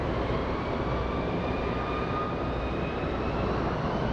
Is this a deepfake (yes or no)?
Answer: no